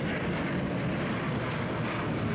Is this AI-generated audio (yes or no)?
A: no